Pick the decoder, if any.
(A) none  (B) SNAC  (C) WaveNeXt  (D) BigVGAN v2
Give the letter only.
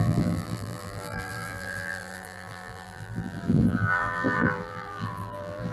D